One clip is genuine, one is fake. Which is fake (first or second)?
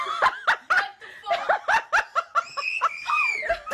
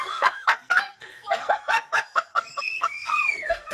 second